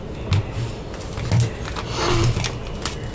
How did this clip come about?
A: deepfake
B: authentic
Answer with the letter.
B